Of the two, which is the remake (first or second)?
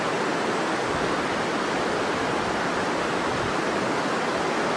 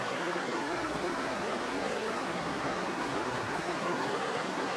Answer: second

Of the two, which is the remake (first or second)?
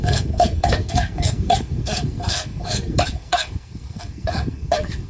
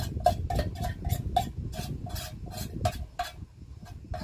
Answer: first